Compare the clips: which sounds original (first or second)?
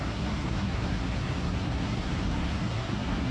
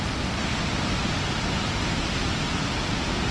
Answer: second